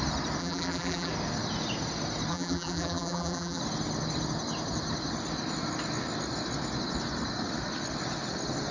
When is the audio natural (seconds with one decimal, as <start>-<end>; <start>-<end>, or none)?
0.0-0.4; 1.1-2.3; 3.6-8.7